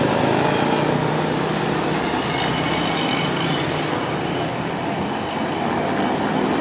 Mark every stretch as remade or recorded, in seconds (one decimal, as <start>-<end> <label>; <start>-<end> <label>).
0.0-6.6 recorded